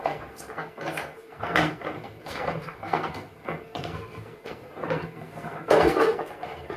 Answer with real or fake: fake